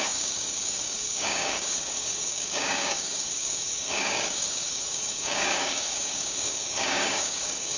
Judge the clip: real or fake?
fake